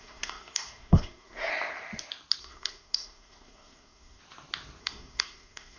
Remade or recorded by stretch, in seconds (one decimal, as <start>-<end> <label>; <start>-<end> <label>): 0.0-1.5 remade; 1.5-2.4 recorded; 2.4-4.2 remade; 4.2-4.8 recorded; 4.8-5.8 remade